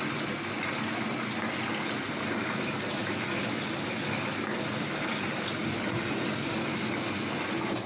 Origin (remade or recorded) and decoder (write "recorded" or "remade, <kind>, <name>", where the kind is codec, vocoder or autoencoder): recorded